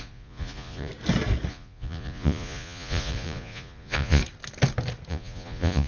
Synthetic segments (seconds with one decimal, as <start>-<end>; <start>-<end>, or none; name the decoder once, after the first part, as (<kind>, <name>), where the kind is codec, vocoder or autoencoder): 0.0-0.9 (vocoder, Vocos); 1.5-4.2; 5.1-5.9